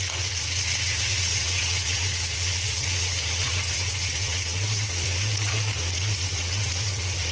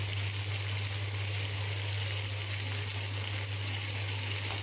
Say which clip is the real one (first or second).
second